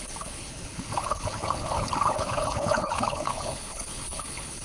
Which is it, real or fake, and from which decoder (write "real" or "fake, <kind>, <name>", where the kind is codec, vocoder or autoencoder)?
fake, codec, HILCodec